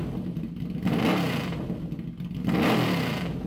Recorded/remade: recorded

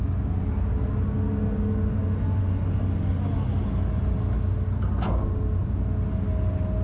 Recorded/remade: recorded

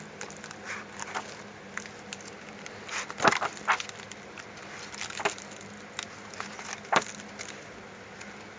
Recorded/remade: recorded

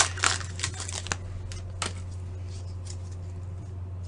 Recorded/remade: recorded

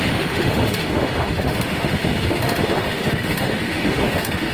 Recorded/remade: remade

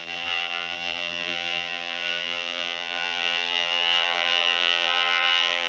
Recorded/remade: remade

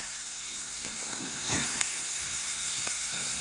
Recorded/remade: remade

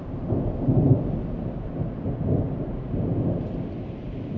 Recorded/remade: recorded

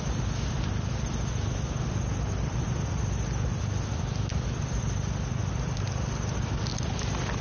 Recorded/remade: recorded